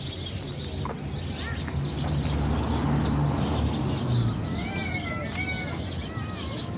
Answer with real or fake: real